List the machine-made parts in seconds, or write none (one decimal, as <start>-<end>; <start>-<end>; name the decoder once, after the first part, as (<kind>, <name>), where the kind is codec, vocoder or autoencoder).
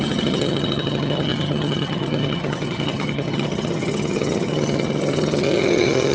0.0-6.1 (vocoder, HiFi-GAN)